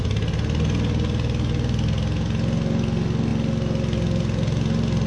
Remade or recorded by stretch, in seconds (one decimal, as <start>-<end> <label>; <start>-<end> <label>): 0.0-5.1 recorded